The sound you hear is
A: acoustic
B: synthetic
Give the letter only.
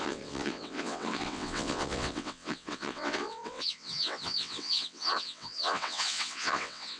B